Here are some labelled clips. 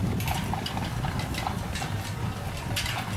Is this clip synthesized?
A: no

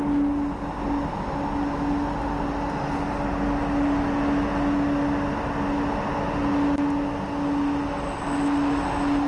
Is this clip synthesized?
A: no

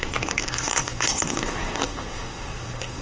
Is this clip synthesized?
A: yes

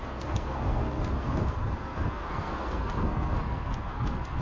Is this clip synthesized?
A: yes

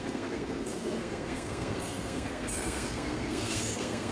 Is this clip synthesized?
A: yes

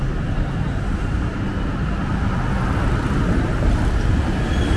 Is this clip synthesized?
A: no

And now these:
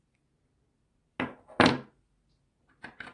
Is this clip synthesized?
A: no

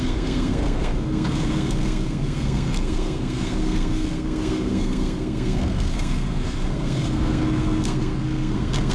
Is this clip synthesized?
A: yes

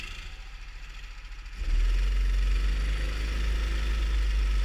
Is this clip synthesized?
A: no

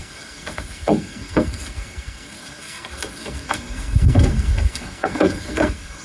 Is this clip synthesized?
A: yes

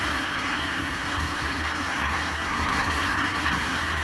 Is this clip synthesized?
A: yes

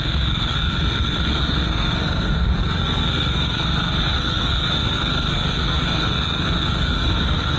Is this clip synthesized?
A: yes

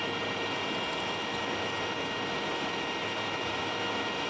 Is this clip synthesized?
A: no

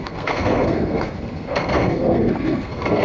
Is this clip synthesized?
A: yes